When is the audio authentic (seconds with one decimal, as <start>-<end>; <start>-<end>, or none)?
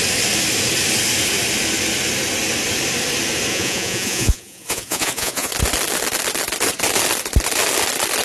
0.0-3.5; 5.5-8.2